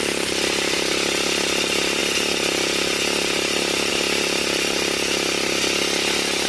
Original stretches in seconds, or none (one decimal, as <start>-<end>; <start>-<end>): 0.0-6.5